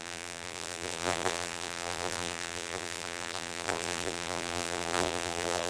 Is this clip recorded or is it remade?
remade